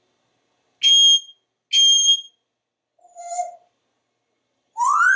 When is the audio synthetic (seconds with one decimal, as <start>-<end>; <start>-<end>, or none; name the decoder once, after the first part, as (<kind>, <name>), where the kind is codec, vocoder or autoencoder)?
none